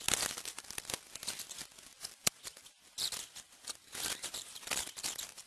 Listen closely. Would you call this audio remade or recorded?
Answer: recorded